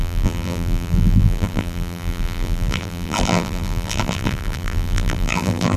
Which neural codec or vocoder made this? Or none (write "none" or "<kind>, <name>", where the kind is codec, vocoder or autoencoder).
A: vocoder, BigVGAN v2